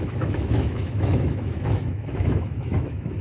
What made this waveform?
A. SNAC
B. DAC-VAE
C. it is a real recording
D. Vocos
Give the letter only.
B